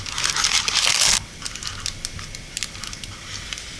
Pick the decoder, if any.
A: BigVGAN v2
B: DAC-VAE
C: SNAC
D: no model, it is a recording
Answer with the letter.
D